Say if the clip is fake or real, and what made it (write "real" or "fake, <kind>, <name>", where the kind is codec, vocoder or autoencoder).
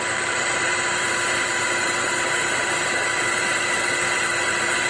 fake, vocoder, BigVGAN v2